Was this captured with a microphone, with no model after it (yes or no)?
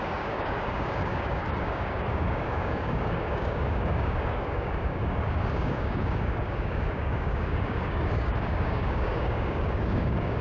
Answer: no